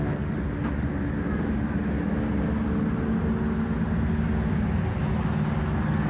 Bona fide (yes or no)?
yes